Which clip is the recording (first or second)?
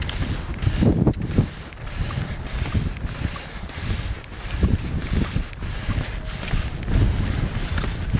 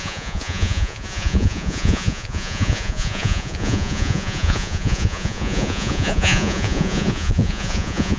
first